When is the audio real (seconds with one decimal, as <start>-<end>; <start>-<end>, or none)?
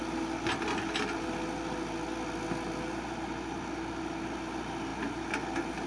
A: 0.0-5.9